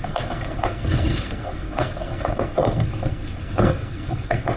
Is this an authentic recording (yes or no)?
no